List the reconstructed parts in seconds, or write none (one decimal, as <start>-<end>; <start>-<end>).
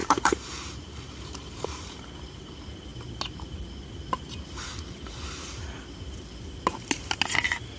0.0-2.5